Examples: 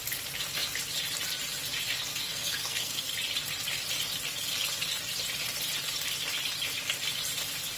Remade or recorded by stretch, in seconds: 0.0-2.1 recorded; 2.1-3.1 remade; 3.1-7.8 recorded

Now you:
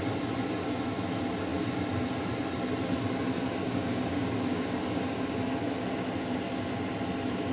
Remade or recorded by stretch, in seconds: 0.0-3.6 recorded; 3.6-5.0 remade; 5.0-7.5 recorded

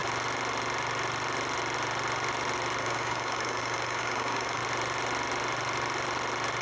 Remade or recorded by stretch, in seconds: 0.0-2.8 recorded; 2.8-4.6 remade; 4.6-6.6 recorded

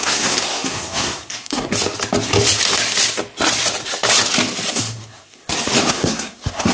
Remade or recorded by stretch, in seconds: 0.0-1.7 remade; 1.7-4.7 recorded; 4.7-5.4 remade; 5.4-5.9 recorded; 5.9-6.7 remade

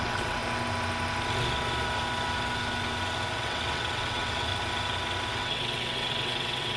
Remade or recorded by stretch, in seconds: 0.0-0.4 remade; 0.4-3.3 recorded; 3.3-4.5 remade; 4.5-5.3 recorded; 5.3-6.8 remade